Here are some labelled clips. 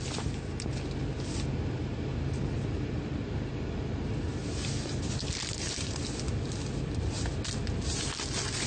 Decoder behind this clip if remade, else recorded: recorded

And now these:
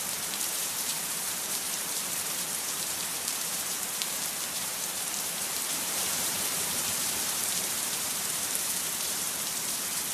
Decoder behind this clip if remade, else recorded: remade, vocoder, BigVGAN v2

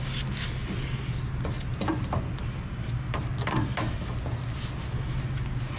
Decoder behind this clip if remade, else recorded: recorded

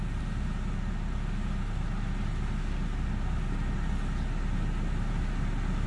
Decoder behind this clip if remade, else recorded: recorded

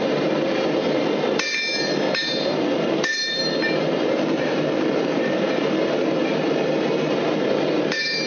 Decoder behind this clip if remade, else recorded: remade, vocoder, BigVGAN v2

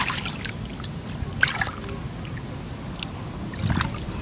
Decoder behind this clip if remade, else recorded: recorded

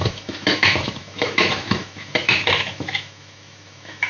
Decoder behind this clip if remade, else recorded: remade, autoencoder, DAC-VAE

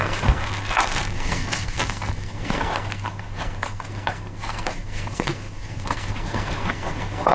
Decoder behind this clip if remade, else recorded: remade, codec, SNAC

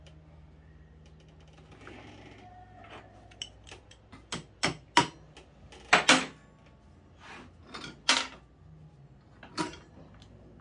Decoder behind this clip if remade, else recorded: recorded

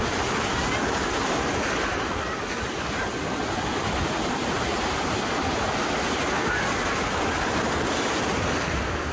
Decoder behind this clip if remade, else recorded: recorded